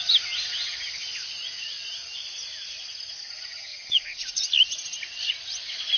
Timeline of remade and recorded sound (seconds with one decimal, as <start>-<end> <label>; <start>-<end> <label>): 0.0-1.0 recorded; 1.0-1.9 remade; 1.9-3.7 recorded; 3.7-4.5 remade; 4.5-6.0 recorded

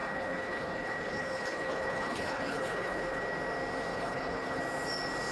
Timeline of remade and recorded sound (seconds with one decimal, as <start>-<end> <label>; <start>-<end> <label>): 0.0-3.2 remade; 3.2-3.9 recorded; 3.9-4.6 remade; 4.6-5.3 recorded

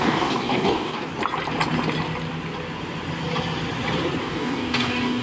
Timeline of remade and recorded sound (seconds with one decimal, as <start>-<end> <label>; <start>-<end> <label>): 0.0-1.1 remade; 1.1-4.2 recorded; 4.2-5.2 remade

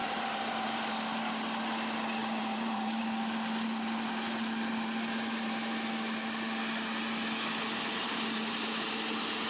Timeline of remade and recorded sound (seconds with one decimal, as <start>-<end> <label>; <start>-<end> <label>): 0.0-1.2 remade; 1.2-2.2 recorded; 2.2-3.0 remade; 3.0-8.0 recorded; 8.0-9.5 remade

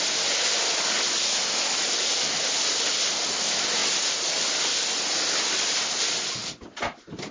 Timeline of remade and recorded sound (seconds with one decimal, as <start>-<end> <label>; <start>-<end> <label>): 0.0-7.3 recorded